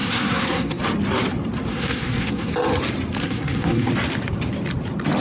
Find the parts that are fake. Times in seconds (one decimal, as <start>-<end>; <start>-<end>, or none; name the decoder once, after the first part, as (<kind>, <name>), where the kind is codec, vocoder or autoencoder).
0.0-0.8 (codec, SNAC); 1.7-2.5; 3.2-3.9